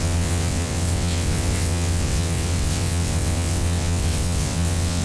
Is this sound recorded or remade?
remade